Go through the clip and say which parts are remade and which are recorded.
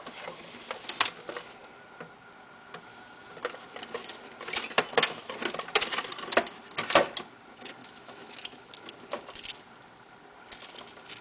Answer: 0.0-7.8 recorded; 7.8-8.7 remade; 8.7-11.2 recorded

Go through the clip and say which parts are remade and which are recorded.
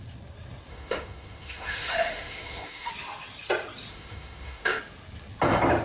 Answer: 0.0-0.7 recorded; 0.7-2.9 remade; 2.9-3.9 recorded; 3.9-4.8 remade; 4.8-5.8 recorded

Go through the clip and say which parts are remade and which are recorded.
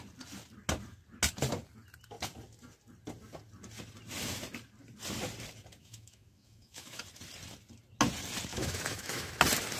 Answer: 0.0-5.8 recorded; 5.8-7.0 remade; 7.0-8.5 recorded; 8.5-9.3 remade; 9.3-9.8 recorded